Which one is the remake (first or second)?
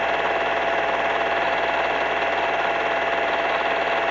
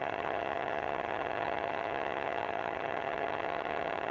second